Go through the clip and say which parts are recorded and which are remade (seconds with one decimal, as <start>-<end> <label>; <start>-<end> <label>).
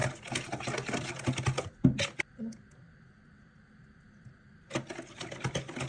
0.0-5.9 recorded